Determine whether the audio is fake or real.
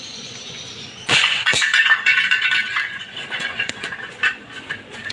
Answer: fake